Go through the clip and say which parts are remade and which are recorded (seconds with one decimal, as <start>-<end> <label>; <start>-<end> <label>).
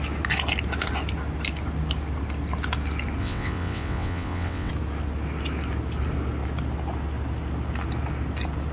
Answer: 0.0-3.2 recorded; 3.2-4.7 remade; 4.7-8.7 recorded